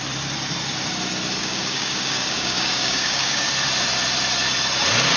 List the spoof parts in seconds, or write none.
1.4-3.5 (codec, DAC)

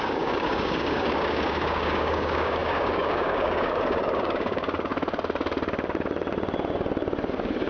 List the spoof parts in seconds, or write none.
0.0-4.9 (codec, DAC); 7.3-7.7

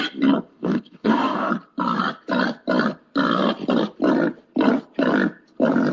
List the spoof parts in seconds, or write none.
0.5-1.5 (codec, DAC)

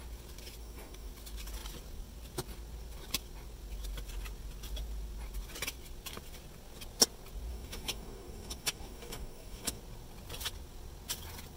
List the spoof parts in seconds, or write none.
0.6-1.1 (codec, DAC); 7.5-9.8

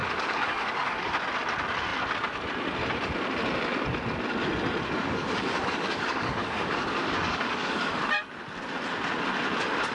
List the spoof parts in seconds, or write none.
0.0-1.1 (codec, DAC); 5.0-7.9

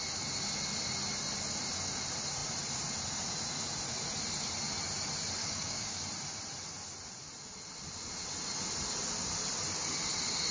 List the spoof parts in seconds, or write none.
5.4-6.0 (codec, DAC)